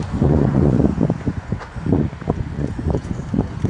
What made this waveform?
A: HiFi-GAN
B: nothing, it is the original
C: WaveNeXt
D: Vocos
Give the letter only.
D